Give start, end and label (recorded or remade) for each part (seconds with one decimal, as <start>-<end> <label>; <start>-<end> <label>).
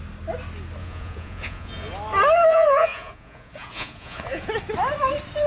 0.0-0.8 recorded; 0.8-1.9 remade; 1.9-2.5 recorded; 2.5-4.5 remade; 4.5-5.5 recorded